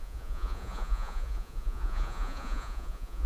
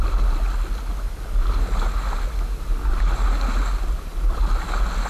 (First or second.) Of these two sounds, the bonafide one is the second